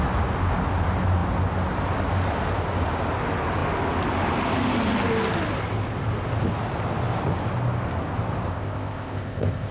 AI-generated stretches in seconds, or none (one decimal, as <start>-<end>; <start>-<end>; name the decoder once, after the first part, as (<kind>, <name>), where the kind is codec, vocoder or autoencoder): 8.5-9.7 (codec, ZipCodec)